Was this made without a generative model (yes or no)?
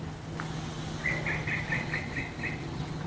yes